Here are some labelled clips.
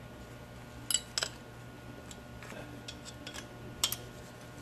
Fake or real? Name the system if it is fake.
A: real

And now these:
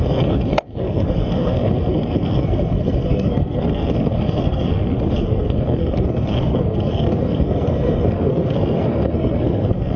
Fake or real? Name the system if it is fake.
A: fake, codec, SNAC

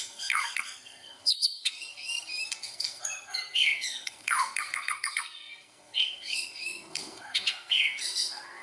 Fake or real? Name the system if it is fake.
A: fake, codec, SNAC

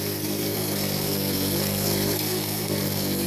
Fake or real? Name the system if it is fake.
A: fake, codec, SNAC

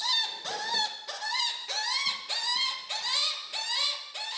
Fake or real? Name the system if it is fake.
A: real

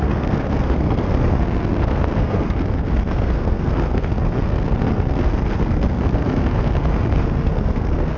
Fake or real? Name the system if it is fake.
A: fake, codec, SNAC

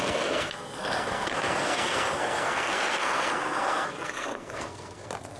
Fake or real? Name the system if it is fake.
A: fake, codec, SNAC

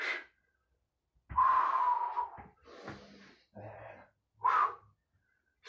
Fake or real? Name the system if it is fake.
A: real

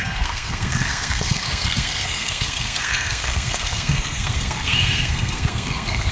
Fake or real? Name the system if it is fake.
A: fake, codec, SNAC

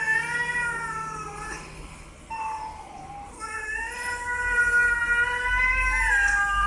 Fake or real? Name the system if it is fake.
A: real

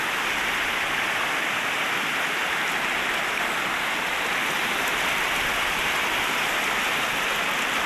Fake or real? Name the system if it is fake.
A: real